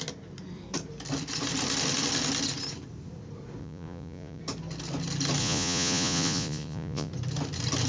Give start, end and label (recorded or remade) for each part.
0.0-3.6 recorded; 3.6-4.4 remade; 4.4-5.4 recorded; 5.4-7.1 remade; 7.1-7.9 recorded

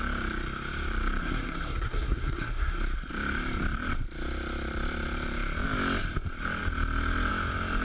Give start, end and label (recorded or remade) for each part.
0.0-1.2 recorded; 1.2-2.8 remade; 2.8-7.8 recorded

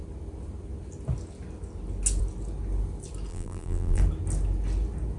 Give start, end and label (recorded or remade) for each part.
0.0-3.3 recorded; 3.3-4.0 remade; 4.0-5.2 recorded

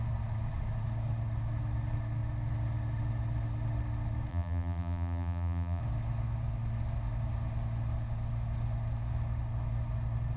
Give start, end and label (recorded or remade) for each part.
0.0-4.3 recorded; 4.3-5.8 remade; 5.8-10.4 recorded

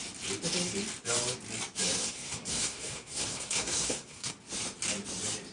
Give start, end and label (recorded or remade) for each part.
0.0-2.0 recorded; 2.0-4.3 remade; 4.3-5.5 recorded

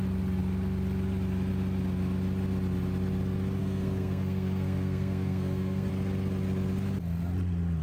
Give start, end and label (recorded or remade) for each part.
0.0-3.6 recorded; 3.6-5.9 remade; 5.9-7.8 recorded

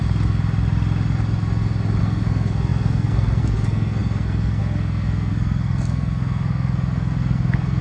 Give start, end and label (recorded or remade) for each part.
0.0-2.0 recorded; 2.0-7.8 remade

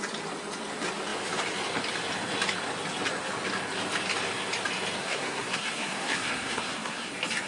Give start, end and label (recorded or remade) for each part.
0.0-5.0 recorded; 5.0-7.1 remade; 7.1-7.5 recorded